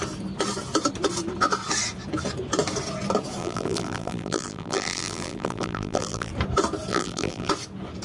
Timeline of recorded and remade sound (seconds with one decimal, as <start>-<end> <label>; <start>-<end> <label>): 0.0-3.4 recorded; 3.4-6.3 remade; 6.3-6.9 recorded; 6.9-7.5 remade; 7.5-8.0 recorded